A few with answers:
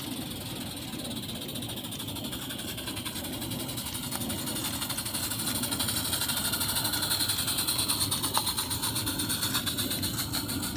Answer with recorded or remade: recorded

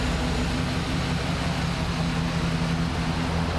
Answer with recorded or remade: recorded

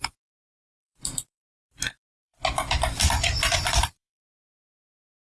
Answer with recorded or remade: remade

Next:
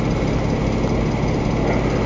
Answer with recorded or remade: recorded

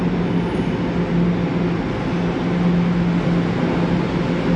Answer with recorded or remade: recorded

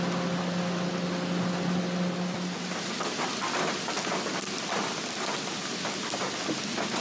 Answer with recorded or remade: recorded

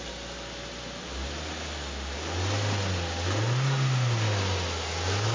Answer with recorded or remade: recorded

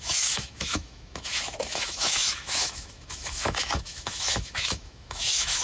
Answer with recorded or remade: remade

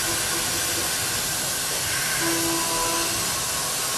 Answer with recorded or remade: recorded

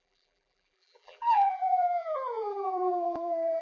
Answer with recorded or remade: remade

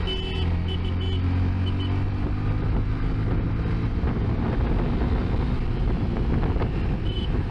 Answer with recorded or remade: recorded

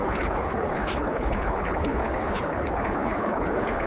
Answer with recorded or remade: remade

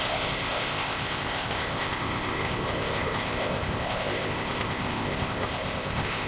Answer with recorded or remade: remade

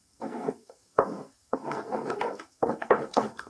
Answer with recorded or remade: remade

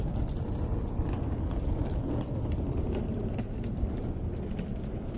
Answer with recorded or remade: recorded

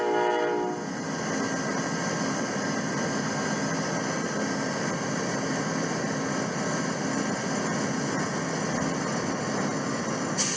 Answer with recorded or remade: recorded